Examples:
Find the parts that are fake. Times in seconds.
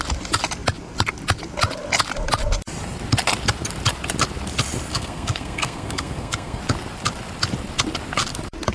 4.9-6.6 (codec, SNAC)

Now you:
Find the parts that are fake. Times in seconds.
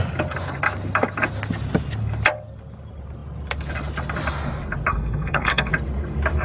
4.9-5.7 (codec, SNAC)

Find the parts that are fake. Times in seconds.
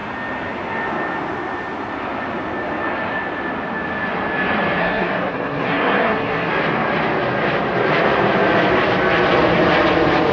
4.8-6.5 (codec, SNAC)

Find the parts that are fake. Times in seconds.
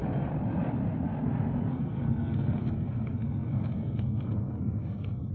1.7-5.3 (codec, SNAC)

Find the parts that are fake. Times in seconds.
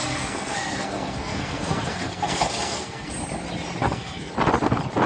0.0-3.1 (codec, SNAC); 3.8-4.3